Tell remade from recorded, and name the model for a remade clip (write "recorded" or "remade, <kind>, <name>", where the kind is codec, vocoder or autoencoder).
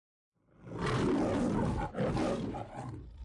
recorded